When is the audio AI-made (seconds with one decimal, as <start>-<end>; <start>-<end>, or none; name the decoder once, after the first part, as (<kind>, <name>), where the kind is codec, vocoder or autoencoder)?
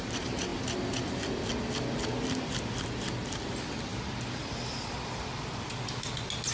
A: none